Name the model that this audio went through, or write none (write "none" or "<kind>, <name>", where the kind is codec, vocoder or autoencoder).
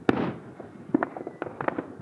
none